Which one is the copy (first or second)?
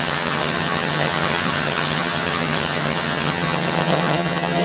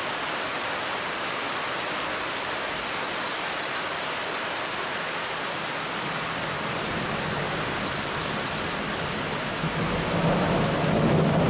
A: first